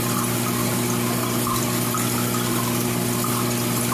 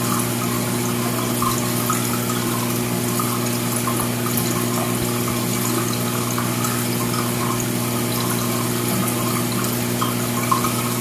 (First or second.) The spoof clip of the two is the first